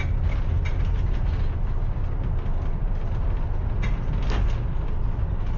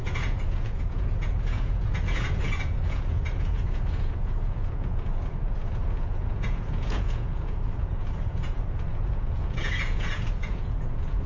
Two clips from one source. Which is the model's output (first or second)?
second